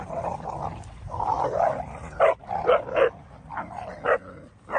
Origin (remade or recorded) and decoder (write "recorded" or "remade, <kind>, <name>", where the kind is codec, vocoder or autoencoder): recorded